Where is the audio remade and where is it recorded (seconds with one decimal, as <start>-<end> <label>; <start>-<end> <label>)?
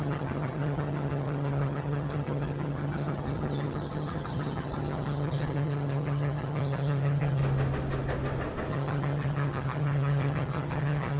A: 0.0-7.4 remade; 7.4-8.7 recorded; 8.7-11.2 remade